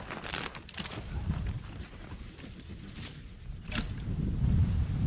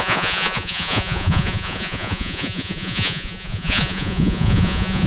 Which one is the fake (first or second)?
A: second